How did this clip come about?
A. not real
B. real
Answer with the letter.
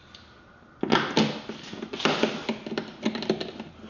B